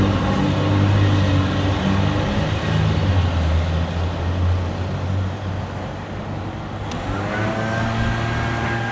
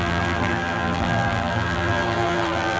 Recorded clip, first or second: first